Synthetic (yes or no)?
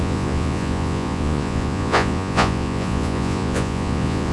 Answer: yes